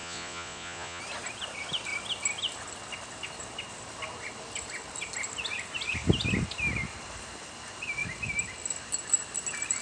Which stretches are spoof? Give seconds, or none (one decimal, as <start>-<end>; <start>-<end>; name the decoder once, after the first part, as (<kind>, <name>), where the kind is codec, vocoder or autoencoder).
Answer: 0.0-1.0 (vocoder, Vocos)